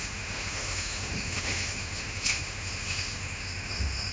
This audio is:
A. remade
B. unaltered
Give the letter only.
A